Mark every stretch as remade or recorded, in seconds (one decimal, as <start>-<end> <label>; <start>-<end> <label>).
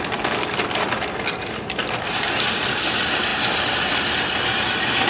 0.0-5.1 recorded